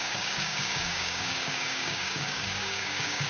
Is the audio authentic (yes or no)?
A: no